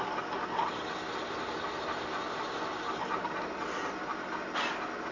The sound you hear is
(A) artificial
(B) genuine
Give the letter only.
B